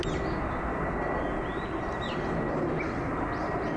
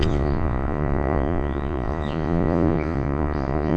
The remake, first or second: second